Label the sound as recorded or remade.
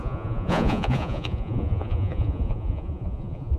remade